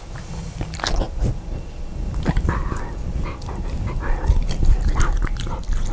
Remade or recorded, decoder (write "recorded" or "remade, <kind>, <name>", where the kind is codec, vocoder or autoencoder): recorded